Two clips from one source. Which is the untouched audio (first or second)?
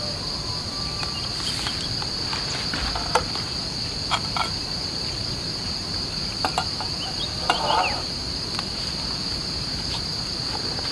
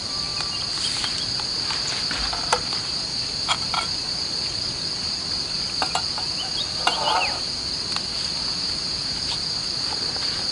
second